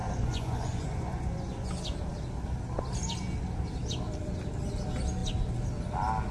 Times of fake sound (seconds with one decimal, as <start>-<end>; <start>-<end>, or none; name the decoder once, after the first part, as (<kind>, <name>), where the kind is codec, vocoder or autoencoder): 0.0-1.7 (vocoder, Vocos)